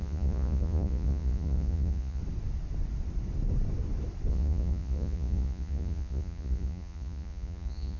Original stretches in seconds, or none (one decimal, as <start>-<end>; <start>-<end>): 2.2-4.3